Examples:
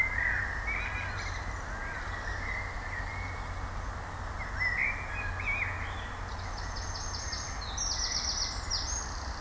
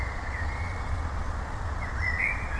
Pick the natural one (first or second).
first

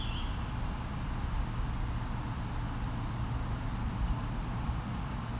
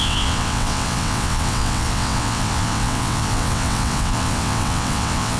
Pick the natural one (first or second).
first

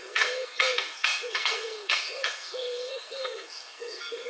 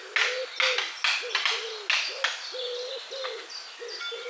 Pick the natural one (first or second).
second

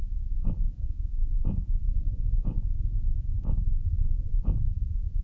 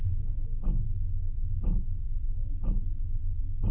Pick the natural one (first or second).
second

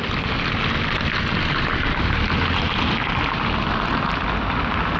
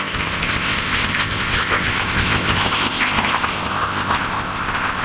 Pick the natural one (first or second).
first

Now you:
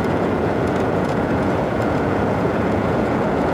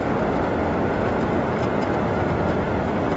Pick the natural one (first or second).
second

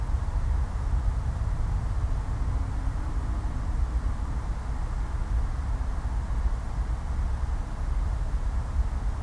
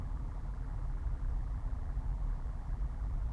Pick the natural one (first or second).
first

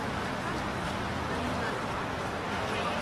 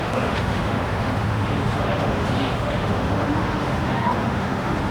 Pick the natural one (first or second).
first